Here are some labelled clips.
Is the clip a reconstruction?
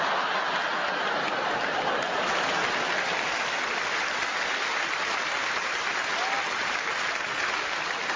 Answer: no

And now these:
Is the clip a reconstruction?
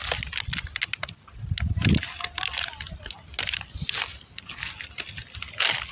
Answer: no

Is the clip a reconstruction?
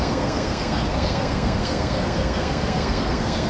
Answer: yes